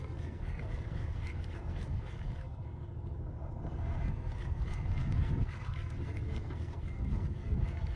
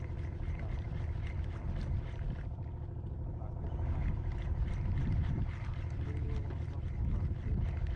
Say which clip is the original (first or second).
second